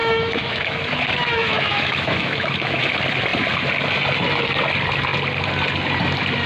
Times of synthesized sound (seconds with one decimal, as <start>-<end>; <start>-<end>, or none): 0.0-2.9